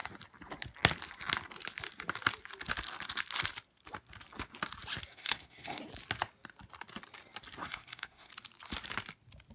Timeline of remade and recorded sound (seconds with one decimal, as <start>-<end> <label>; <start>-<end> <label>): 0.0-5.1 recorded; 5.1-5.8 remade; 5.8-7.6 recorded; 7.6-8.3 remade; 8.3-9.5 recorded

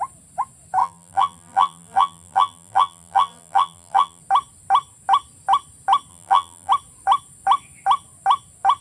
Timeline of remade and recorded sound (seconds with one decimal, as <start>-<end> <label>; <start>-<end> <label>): 0.0-0.8 recorded; 0.8-4.2 remade; 4.2-6.1 recorded; 6.1-6.7 remade; 6.7-8.8 recorded

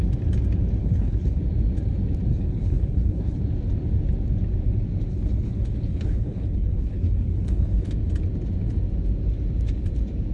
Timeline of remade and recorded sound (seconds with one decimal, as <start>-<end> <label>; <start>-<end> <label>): 0.0-0.8 recorded; 0.8-1.4 remade; 1.4-2.3 recorded; 2.3-3.4 remade; 3.4-5.1 recorded; 5.1-7.9 remade; 7.9-10.3 recorded

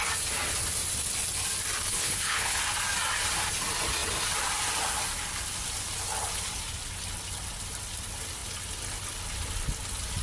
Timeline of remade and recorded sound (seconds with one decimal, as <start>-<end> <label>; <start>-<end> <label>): 0.0-1.9 recorded; 1.9-2.6 remade; 2.6-10.2 recorded

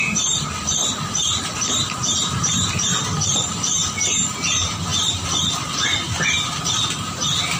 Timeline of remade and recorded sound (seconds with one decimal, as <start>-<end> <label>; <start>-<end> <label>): 0.0-7.6 recorded

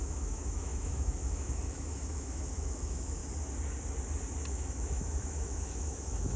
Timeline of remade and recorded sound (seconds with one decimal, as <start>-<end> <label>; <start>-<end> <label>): 0.0-3.2 remade; 3.2-4.5 recorded; 4.5-6.4 remade

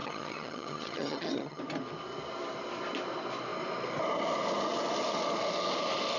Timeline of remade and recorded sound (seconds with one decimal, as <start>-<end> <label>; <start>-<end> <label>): 0.0-1.6 remade; 1.6-6.2 recorded

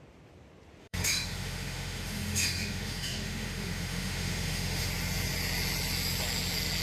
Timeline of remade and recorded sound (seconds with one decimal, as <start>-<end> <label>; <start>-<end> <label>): 0.0-0.8 recorded; 0.8-4.9 remade; 4.9-6.8 recorded